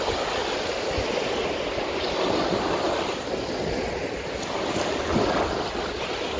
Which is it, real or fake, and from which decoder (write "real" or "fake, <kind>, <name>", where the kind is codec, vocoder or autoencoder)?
real